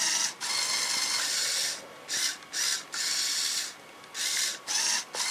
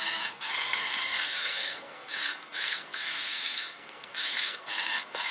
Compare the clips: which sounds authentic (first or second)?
first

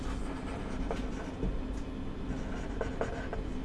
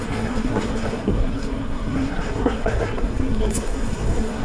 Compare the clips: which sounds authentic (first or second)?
first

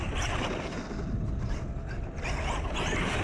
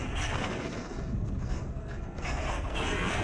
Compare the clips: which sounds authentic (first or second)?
first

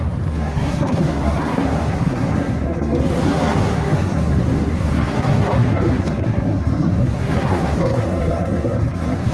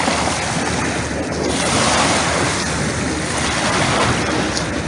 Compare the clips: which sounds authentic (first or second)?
second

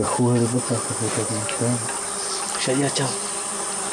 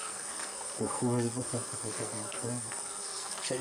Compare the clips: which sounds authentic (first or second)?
first